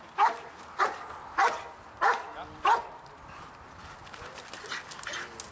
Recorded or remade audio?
recorded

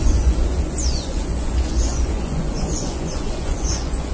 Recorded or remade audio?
remade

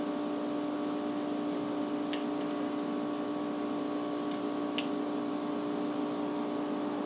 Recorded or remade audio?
recorded